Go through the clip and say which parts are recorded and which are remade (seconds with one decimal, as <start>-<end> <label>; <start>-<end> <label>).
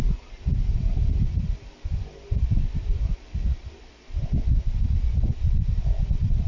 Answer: 0.0-0.7 recorded; 0.7-4.6 remade; 4.6-6.5 recorded